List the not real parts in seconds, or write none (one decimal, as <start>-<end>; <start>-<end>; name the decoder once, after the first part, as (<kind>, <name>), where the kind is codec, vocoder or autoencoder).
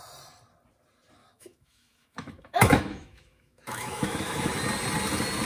1.2-4.5 (autoencoder, DAC-VAE)